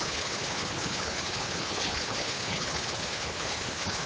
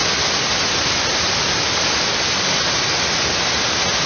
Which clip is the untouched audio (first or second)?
second